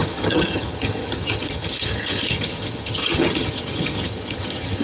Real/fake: fake